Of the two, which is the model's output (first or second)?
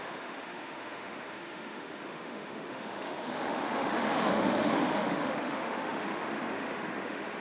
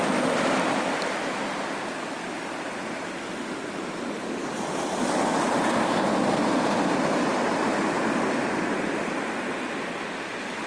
first